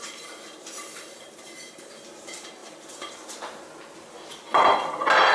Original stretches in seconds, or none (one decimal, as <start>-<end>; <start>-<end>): 0.0-5.3